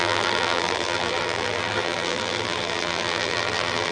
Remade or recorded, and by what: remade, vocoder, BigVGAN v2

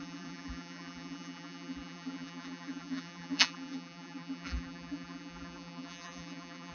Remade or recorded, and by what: remade, vocoder, BigVGAN v2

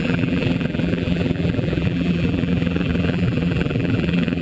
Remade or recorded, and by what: remade, vocoder, BigVGAN v2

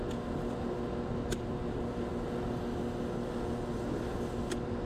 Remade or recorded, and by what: recorded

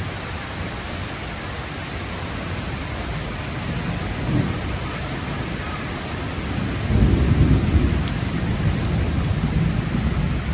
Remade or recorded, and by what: recorded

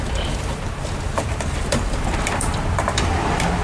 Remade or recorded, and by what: remade, vocoder, BigVGAN v2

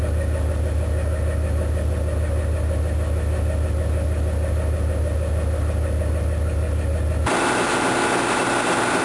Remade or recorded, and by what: recorded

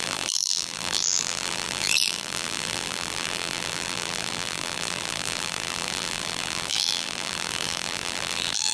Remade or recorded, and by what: remade, vocoder, BigVGAN v2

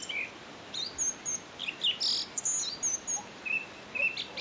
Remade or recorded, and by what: recorded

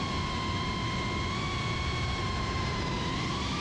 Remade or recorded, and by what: remade, vocoder, BigVGAN v2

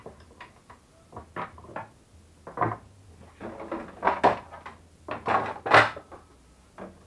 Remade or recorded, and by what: recorded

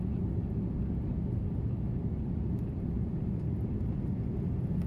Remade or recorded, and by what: recorded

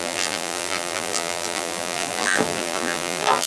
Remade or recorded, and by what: remade, vocoder, BigVGAN v2